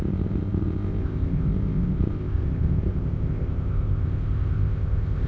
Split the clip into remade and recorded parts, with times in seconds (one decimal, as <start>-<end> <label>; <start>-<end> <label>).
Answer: 0.0-5.3 remade